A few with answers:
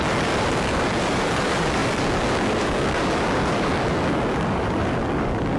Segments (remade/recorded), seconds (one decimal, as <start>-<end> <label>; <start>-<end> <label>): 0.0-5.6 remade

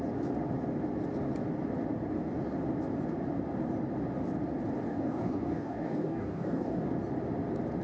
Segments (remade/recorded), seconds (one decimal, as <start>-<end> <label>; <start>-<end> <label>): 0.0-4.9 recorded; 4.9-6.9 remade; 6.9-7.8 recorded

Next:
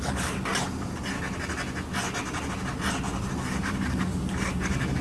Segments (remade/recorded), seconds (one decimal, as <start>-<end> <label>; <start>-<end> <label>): 0.0-0.5 remade; 0.5-3.5 recorded; 3.5-5.0 remade

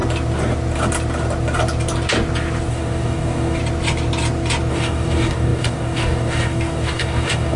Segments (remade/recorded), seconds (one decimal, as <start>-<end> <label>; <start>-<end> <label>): 0.0-2.7 recorded; 2.7-3.6 remade; 3.6-4.7 recorded; 4.7-7.6 remade

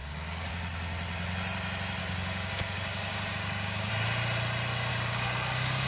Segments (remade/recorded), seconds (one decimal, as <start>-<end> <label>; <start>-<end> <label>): 0.0-0.5 remade; 0.5-2.0 recorded; 2.0-3.9 remade; 3.9-4.9 recorded; 4.9-5.9 remade

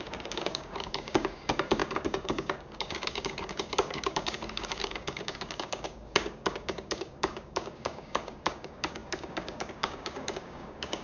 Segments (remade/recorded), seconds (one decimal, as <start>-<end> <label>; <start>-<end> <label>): 0.0-11.0 remade